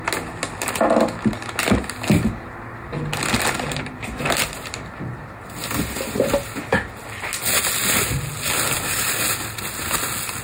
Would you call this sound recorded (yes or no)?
yes